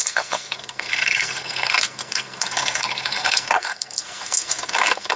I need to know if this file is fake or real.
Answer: fake